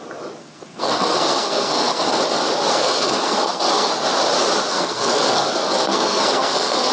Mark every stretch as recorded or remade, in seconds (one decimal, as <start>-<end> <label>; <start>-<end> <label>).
0.0-0.4 recorded; 0.4-2.2 remade; 2.2-2.7 recorded; 2.7-3.9 remade; 3.9-4.7 recorded; 4.7-6.9 remade